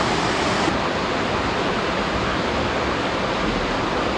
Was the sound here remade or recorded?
recorded